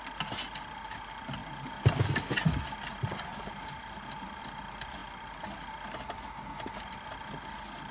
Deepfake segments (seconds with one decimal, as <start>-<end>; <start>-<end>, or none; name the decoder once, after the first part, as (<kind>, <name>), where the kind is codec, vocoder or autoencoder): 3.3-4.4 (vocoder, BigVGAN v2)